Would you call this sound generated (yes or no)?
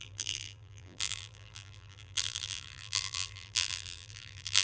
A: yes